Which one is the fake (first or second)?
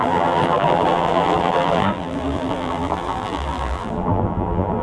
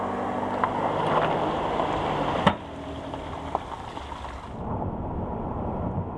first